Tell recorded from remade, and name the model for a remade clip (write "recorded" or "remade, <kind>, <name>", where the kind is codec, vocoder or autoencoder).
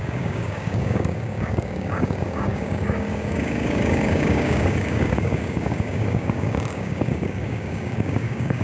remade, codec, DAC